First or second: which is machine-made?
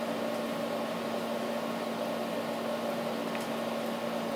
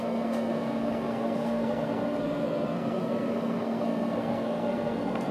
second